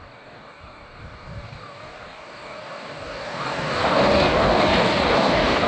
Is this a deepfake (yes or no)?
yes